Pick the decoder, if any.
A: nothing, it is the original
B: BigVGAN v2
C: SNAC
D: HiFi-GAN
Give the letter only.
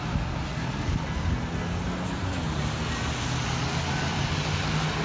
A